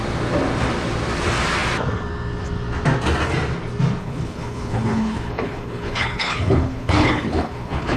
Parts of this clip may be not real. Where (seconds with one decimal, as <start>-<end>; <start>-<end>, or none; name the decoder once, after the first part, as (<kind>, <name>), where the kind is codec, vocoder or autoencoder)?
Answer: 4.0-8.0 (codec, HILCodec)